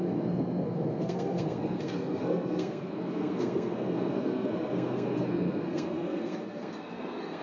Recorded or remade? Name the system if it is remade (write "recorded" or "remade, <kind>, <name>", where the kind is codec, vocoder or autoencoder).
remade, codec, SNAC